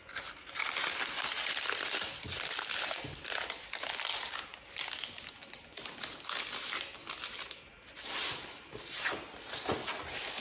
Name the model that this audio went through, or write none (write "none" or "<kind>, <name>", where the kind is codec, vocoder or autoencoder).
none